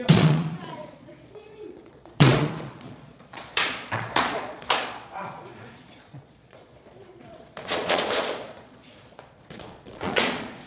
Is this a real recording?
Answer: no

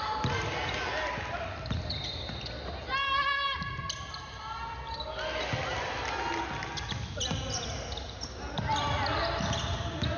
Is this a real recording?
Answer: yes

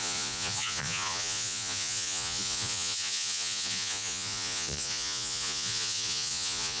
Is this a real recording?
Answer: no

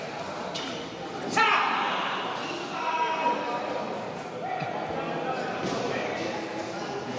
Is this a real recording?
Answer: yes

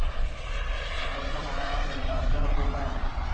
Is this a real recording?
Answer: no